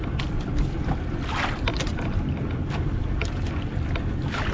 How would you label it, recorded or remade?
recorded